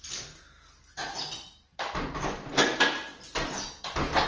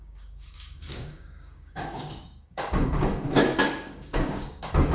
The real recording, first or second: first